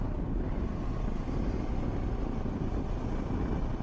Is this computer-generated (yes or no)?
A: no